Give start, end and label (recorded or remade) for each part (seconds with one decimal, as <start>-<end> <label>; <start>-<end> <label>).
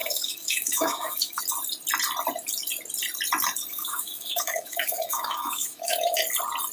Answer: 0.0-1.4 remade; 1.4-3.7 recorded; 3.7-6.2 remade; 6.2-6.7 recorded